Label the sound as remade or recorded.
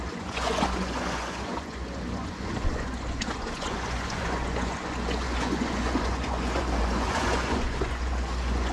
remade